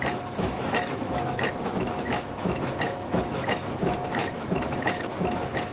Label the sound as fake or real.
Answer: fake